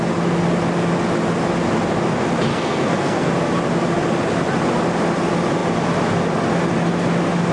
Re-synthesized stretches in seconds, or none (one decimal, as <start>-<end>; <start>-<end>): 2.5-3.3